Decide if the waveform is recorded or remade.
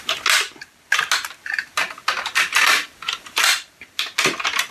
recorded